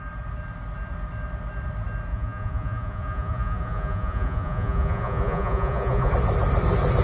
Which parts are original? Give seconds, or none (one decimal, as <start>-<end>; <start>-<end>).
0.0-2.1; 6.1-7.0